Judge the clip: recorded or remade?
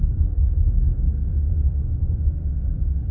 remade